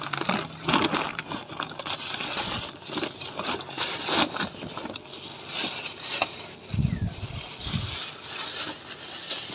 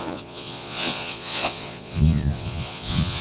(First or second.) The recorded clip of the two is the first